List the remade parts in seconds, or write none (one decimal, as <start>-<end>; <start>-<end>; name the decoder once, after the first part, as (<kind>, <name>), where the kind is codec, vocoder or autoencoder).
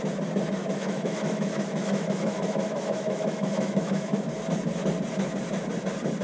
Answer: 0.6-4.3 (autoencoder, DAC-VAE)